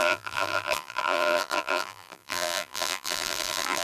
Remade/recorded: remade